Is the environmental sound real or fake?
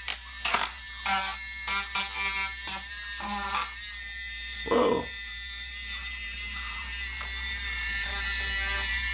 fake